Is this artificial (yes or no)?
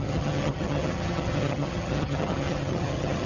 yes